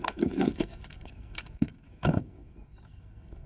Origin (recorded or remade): remade